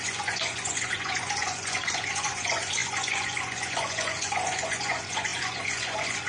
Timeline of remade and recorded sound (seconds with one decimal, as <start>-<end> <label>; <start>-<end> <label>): 0.0-6.3 remade